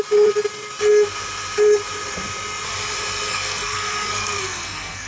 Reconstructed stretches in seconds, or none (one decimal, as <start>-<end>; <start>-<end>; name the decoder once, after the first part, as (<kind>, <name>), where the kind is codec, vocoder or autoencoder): 3.3-5.1 (codec, SNAC)